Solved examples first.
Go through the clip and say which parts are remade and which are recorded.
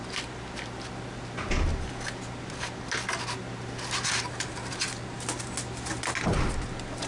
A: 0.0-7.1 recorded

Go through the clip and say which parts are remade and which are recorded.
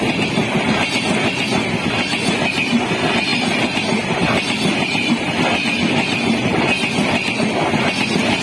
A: 0.0-3.3 recorded; 3.3-6.6 remade; 6.6-8.4 recorded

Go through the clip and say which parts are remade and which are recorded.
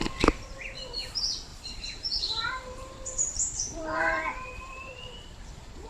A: 0.0-1.5 recorded; 1.5-5.0 remade; 5.0-5.9 recorded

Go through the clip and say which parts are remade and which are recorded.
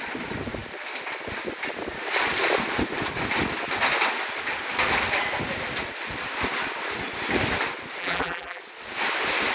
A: 0.0-8.0 recorded; 8.0-8.6 remade; 8.6-9.5 recorded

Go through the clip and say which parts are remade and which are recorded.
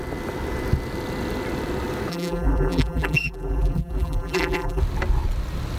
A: 0.0-2.1 recorded; 2.1-4.8 remade; 4.8-5.8 recorded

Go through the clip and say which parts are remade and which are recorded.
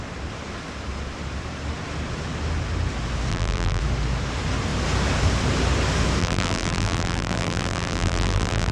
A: 0.0-3.3 recorded; 3.3-3.8 remade; 3.8-6.2 recorded; 6.2-8.7 remade